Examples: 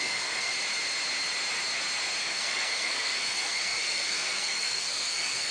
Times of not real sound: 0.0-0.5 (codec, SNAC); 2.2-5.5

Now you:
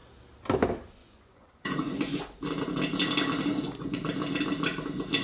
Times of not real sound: 1.0-2.2 (vocoder, Vocos); 3.5-4.0

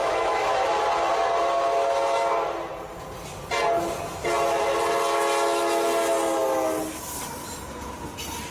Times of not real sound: 0.0-0.7 (autoencoder, DAC-VAE)

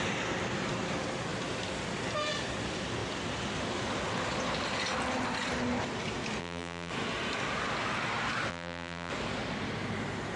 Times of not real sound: 6.4-6.9 (vocoder, BigVGAN v2); 8.5-9.1

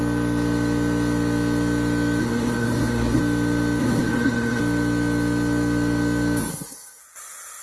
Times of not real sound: 2.2-3.2 (codec, SNAC); 3.8-4.6; 6.5-7.0

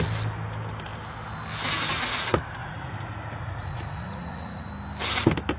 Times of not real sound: 2.6-4.7 (vocoder, Vocos)